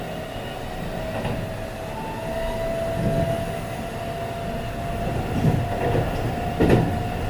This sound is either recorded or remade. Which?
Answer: recorded